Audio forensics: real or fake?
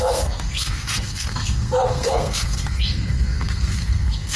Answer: fake